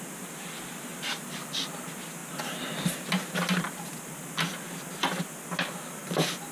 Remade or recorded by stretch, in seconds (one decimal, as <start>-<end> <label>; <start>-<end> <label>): 0.0-6.5 recorded